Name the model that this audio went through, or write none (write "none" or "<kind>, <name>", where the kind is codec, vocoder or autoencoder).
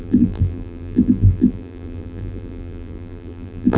vocoder, BigVGAN v2